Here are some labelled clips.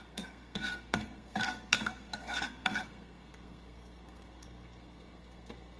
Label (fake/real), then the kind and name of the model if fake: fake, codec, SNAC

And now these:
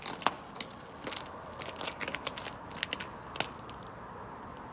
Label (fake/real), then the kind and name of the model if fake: real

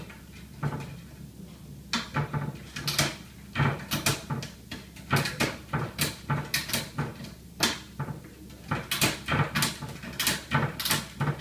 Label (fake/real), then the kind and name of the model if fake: real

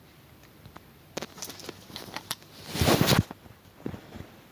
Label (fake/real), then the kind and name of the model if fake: fake, vocoder, BigVGAN v2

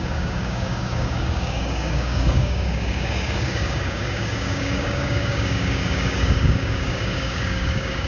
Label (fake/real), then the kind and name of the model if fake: fake, codec, DAC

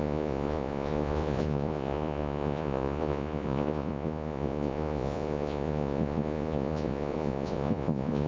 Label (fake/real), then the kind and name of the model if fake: fake, vocoder, Vocos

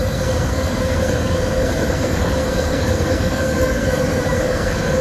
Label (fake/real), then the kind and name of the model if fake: fake, codec, SNAC